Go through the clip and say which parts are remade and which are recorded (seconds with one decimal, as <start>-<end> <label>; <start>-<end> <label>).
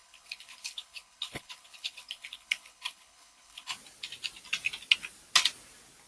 0.0-3.7 remade; 3.7-6.1 recorded